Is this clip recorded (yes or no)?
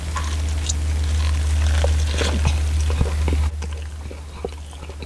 yes